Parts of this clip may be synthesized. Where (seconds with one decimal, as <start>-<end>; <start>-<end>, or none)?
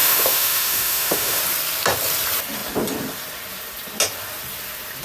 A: 0.0-1.4